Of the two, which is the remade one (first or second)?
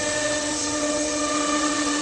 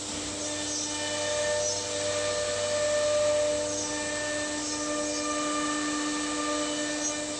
first